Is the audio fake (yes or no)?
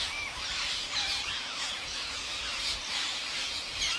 yes